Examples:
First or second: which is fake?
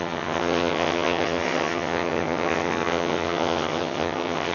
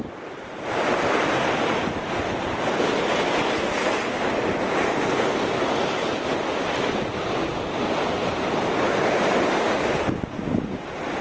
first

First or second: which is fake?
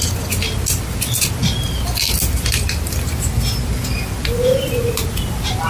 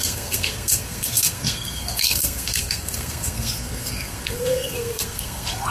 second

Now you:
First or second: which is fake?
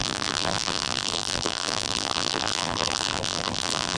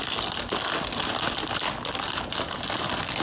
first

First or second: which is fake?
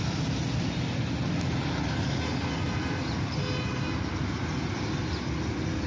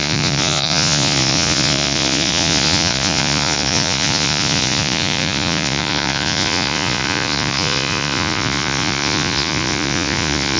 second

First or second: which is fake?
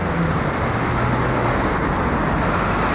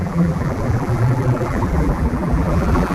second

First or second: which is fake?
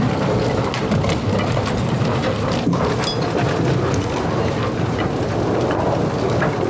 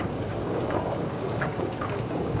second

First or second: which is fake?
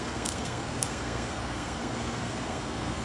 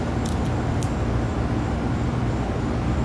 first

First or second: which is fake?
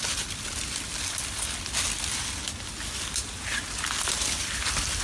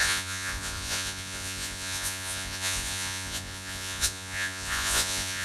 second